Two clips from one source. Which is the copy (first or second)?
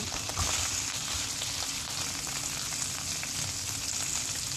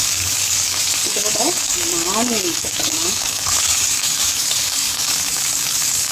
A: second